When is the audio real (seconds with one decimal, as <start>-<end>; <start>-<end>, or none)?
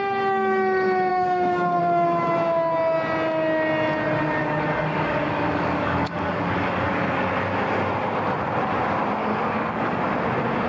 0.0-1.1; 1.8-4.4; 7.3-9.2; 10.0-10.7